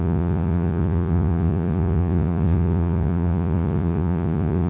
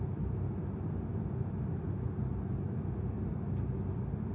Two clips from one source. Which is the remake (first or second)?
first